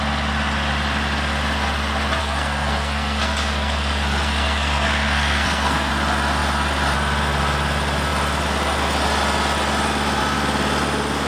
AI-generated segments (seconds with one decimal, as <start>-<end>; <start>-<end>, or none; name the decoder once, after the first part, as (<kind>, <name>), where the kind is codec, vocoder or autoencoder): 2.2-5.9 (codec, SNAC)